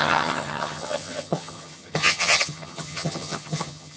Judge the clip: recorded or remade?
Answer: remade